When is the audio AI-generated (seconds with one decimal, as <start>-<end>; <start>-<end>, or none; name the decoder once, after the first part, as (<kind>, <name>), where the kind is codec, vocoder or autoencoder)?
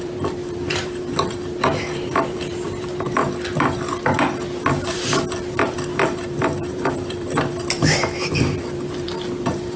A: 0.0-3.2 (vocoder, BigVGAN v2); 4.7-9.8